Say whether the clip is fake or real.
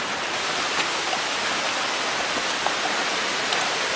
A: real